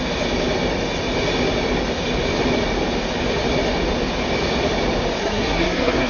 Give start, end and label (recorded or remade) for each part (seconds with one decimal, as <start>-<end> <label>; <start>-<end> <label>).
0.0-5.2 recorded; 5.2-6.1 remade